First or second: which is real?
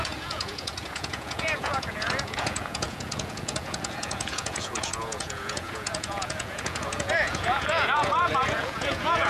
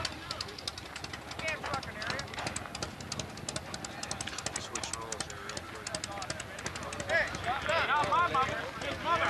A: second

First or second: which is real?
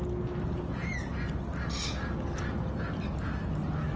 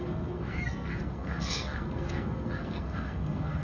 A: first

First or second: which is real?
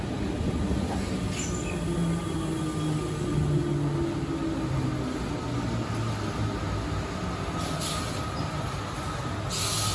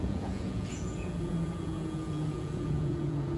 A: first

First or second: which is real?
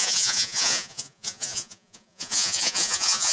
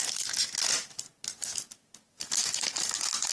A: second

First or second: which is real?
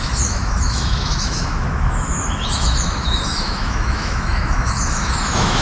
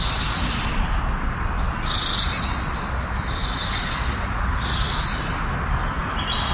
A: second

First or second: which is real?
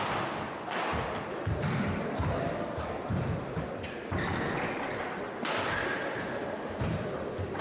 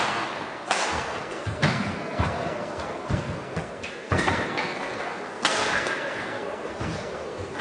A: first